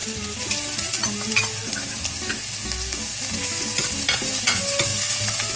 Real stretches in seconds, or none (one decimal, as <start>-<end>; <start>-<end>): 0.0-5.6